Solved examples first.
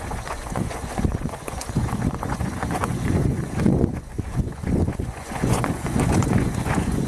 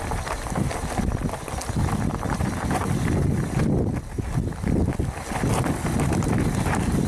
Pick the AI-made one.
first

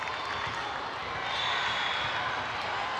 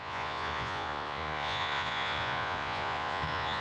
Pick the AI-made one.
second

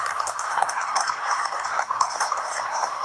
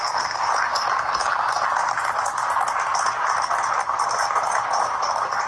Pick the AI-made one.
first